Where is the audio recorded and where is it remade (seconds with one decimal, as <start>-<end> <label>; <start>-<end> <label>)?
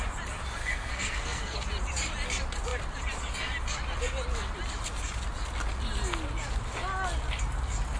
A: 0.0-0.6 recorded; 0.6-1.6 remade; 1.6-8.0 recorded